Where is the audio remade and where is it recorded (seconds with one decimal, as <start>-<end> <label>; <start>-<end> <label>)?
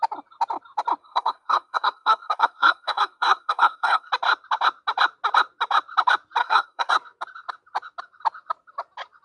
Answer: 0.0-1.0 recorded; 1.0-4.1 remade; 4.1-6.4 recorded; 6.4-6.9 remade; 6.9-9.2 recorded